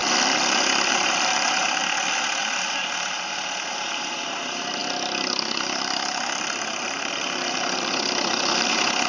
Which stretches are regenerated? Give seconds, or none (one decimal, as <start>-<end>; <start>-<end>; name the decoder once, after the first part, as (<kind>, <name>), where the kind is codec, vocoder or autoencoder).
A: 0.9-1.8 (vocoder, BigVGAN v2); 2.4-9.1